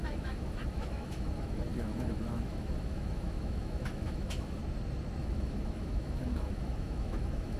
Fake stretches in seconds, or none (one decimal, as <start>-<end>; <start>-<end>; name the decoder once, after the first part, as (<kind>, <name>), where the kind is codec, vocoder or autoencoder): 0.0-4.6 (autoencoder, DAC-VAE); 5.2-7.6